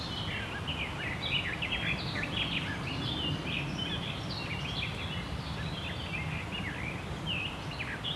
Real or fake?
real